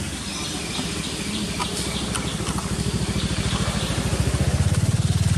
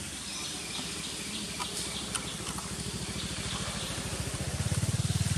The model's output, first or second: second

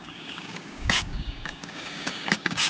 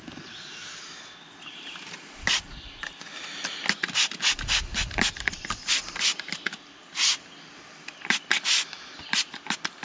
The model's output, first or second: first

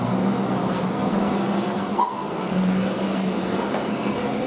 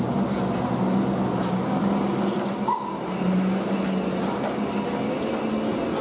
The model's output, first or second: first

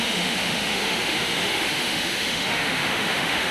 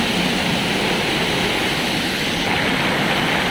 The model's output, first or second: first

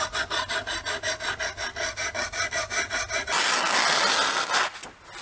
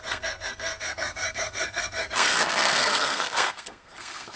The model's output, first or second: second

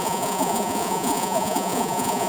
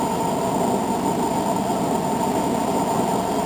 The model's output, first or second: first